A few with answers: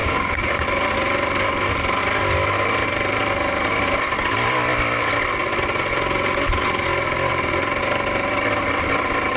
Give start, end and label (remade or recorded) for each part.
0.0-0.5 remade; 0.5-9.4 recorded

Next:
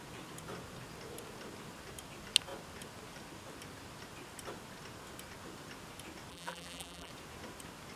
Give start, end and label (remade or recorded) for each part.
0.0-6.3 recorded; 6.3-7.1 remade; 7.1-8.0 recorded

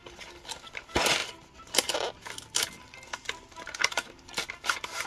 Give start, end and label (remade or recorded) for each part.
0.0-5.1 recorded

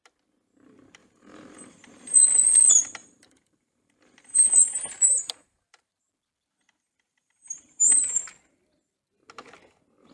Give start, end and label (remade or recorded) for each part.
0.0-1.0 recorded; 1.0-2.2 remade; 2.2-3.0 recorded; 3.0-6.1 remade; 6.1-7.1 recorded; 7.1-8.3 remade; 8.3-10.1 recorded

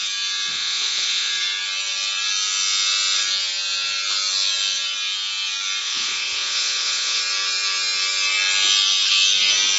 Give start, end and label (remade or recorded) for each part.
0.0-0.5 recorded; 0.5-1.3 remade; 1.3-5.8 recorded; 5.8-7.2 remade; 7.2-9.8 recorded